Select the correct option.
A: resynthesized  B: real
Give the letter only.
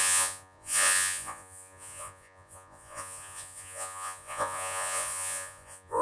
A